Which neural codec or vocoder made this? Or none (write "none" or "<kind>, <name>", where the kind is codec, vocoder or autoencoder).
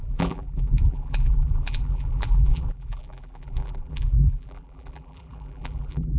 vocoder, BigVGAN v2